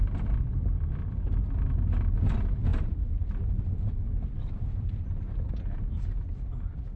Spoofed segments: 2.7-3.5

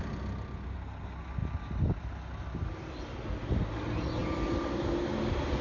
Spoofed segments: none

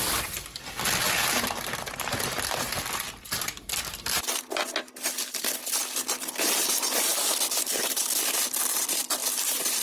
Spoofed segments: none

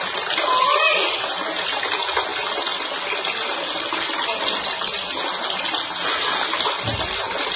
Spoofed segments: none